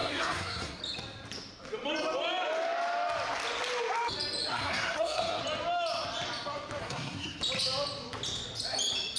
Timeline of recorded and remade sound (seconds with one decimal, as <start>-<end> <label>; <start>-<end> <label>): 0.0-0.8 remade; 0.8-4.5 recorded; 4.5-5.4 remade; 5.4-6.8 recorded; 6.8-7.4 remade; 7.4-9.2 recorded